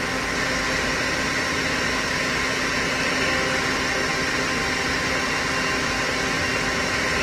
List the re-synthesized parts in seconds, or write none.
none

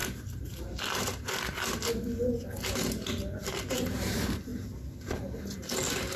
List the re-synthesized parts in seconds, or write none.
3.7-4.5

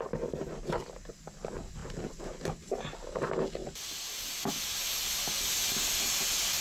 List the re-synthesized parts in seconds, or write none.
1.8-3.0

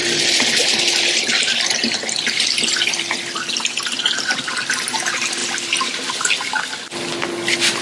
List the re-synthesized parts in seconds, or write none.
0.0-4.0; 5.4-6.6

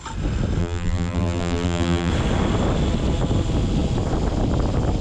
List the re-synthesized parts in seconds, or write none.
0.6-2.1

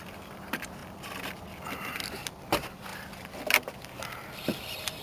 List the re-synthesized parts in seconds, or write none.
none